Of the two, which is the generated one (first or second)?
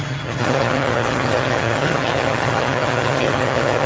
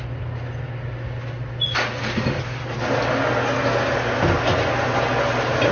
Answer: first